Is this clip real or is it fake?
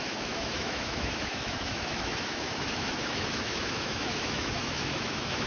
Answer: fake